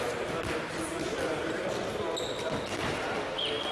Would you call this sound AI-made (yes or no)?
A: no